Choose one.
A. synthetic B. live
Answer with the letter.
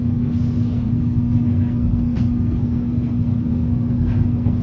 A